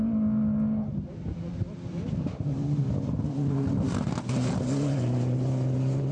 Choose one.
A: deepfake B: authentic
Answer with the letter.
B